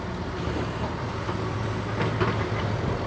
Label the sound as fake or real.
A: real